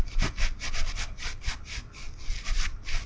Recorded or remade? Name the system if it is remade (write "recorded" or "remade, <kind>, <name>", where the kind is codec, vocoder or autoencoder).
recorded